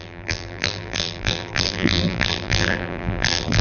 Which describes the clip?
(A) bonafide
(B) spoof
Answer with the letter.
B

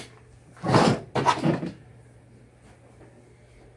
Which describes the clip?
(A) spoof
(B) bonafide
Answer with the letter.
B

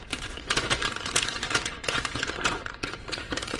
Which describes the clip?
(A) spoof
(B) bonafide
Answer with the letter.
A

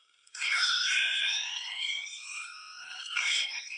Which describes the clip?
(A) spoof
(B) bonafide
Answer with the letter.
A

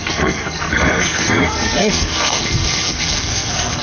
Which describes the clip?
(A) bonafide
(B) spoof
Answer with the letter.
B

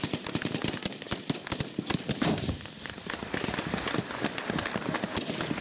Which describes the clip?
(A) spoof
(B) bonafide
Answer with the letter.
B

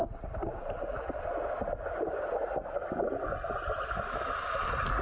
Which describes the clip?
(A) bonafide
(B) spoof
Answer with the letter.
A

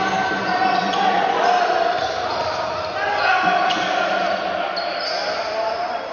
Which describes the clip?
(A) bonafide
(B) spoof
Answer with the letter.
A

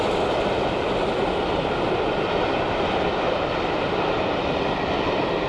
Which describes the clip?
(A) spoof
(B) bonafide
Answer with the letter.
B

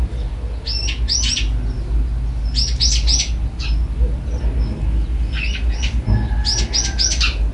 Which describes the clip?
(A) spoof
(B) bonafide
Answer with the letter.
B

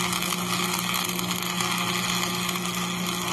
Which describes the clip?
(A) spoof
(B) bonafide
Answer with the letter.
B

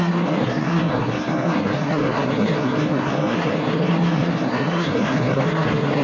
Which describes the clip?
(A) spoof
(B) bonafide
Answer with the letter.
A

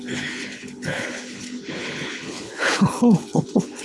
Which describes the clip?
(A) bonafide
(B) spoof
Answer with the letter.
B